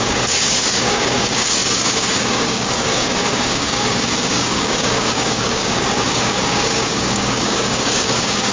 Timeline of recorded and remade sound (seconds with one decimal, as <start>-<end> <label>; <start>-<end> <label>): 0.0-8.5 remade